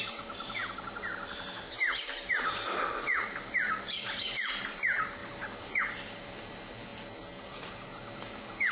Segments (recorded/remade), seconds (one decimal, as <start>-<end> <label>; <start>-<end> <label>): 0.0-8.7 recorded